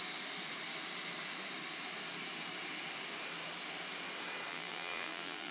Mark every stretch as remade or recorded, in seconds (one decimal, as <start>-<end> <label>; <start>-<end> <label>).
0.0-4.5 recorded; 4.5-5.5 remade